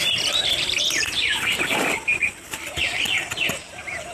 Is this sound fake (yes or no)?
yes